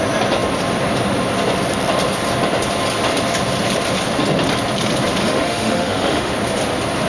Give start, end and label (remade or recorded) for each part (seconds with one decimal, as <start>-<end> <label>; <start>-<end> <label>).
0.0-5.2 recorded; 5.2-6.3 remade; 6.3-7.1 recorded